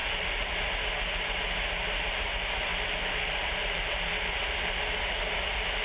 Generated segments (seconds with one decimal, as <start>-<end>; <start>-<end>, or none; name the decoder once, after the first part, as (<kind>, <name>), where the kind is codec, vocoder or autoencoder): 0.0-0.5 (vocoder, BigVGAN v2); 2.7-4.7